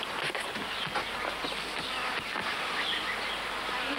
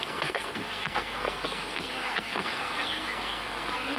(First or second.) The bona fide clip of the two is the first